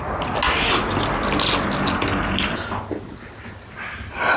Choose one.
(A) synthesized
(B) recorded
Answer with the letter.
B